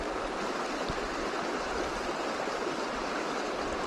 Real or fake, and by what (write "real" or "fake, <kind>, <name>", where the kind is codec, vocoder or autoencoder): real